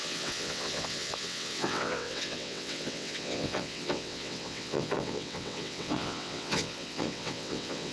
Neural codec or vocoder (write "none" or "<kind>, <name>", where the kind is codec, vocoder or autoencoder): vocoder, WaveNeXt